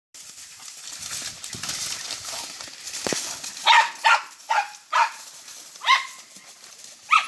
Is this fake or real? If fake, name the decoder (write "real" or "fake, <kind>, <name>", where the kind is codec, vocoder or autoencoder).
real